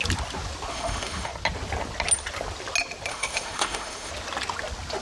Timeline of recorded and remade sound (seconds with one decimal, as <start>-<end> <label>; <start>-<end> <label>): 0.0-0.7 recorded; 0.7-1.3 remade; 1.3-3.1 recorded; 3.1-4.1 remade; 4.1-5.0 recorded